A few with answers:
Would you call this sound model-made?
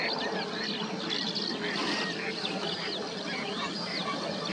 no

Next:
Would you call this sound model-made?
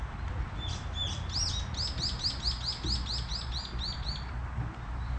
no